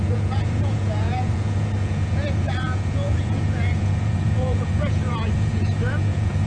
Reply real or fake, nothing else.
fake